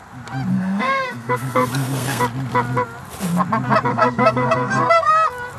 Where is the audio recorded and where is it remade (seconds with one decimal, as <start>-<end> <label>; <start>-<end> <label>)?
0.0-0.5 recorded; 0.5-2.2 remade; 2.2-3.9 recorded; 3.9-5.1 remade; 5.1-5.6 recorded